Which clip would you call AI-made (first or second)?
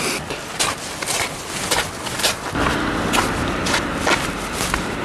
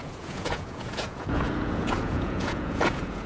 second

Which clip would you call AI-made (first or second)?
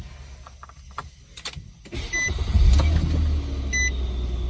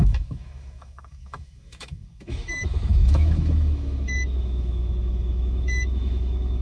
second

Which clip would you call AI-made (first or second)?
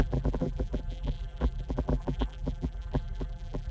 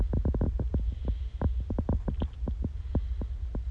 first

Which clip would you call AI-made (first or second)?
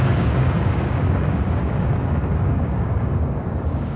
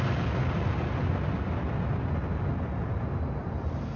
first